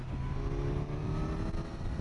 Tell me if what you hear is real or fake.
real